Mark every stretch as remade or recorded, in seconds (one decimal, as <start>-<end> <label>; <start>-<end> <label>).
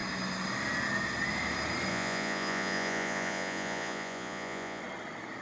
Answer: 0.0-1.9 recorded; 1.9-4.8 remade; 4.8-5.4 recorded